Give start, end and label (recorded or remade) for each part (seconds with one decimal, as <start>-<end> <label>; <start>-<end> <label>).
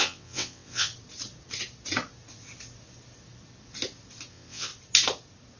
0.0-0.9 remade; 0.9-4.3 recorded; 4.3-4.7 remade; 4.7-5.6 recorded